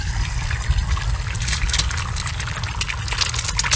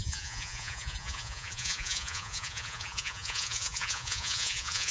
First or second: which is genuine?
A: first